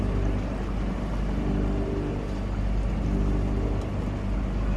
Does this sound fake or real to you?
real